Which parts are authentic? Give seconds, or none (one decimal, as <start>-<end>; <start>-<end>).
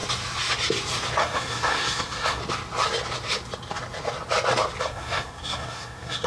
0.0-1.2; 2.4-4.8